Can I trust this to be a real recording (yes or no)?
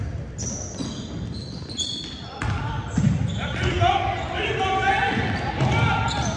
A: yes